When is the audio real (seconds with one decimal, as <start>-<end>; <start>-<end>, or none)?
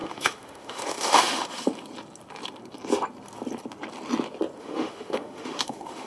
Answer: 1.7-4.6